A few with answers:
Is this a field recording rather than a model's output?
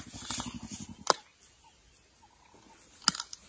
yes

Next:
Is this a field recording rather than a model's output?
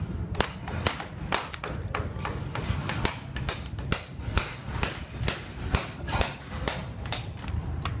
yes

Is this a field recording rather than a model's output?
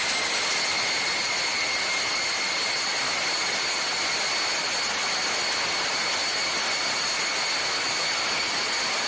yes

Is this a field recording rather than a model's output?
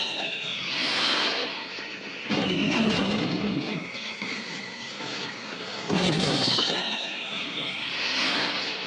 no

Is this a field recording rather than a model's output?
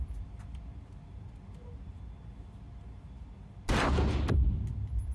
yes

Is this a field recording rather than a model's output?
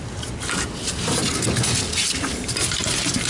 yes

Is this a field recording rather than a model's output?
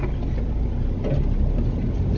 yes